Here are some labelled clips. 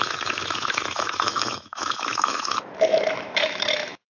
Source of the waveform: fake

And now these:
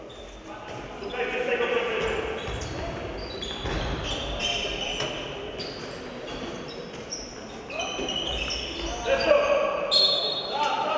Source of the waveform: real